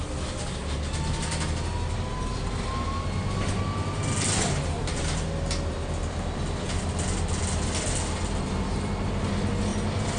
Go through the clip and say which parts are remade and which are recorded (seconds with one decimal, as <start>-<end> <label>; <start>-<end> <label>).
0.0-10.2 recorded